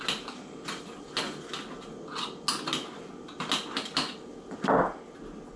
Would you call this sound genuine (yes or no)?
yes